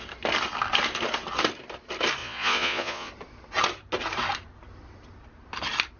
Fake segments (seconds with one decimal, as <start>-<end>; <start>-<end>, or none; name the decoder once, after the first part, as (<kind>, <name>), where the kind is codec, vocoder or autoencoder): 2.2-3.1 (vocoder, Vocos)